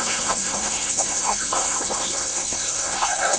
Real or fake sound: fake